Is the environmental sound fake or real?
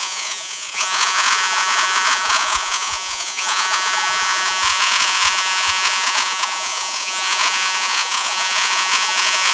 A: fake